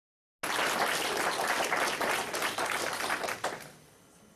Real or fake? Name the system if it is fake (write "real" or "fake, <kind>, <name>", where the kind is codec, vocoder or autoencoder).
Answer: real